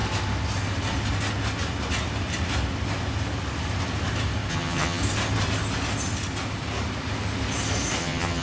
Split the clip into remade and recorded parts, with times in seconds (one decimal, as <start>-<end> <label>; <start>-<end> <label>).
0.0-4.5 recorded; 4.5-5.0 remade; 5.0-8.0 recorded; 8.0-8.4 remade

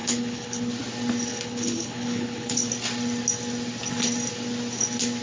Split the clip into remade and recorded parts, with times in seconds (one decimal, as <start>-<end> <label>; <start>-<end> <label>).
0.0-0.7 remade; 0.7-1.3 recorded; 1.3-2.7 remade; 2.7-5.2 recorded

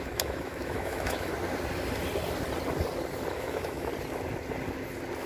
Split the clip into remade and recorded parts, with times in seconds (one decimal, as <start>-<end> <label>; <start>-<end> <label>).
0.0-1.3 remade; 1.3-3.3 recorded; 3.3-3.9 remade; 3.9-5.3 recorded